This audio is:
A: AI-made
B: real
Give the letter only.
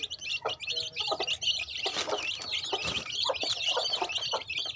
A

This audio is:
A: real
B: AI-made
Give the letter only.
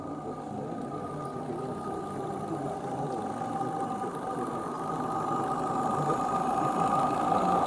A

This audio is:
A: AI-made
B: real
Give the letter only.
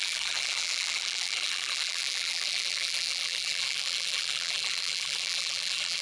A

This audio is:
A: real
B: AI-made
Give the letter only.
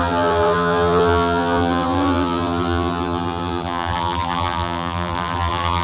B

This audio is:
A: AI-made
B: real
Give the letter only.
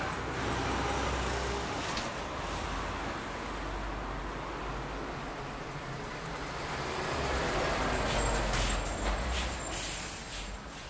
B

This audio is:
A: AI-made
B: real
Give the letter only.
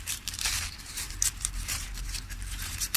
A